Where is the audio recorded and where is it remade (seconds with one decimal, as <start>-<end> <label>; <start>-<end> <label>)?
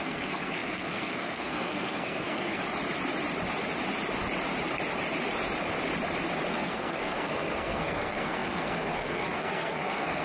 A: 0.0-2.6 remade; 2.6-6.5 recorded; 6.5-10.2 remade